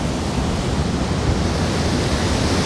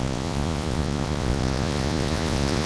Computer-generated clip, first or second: second